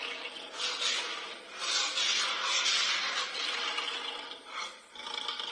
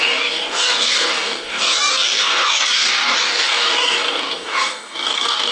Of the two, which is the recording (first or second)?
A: first